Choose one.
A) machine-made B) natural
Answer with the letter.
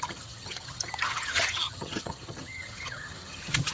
A